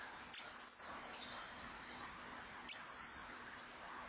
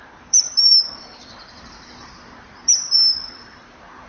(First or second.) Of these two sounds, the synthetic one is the second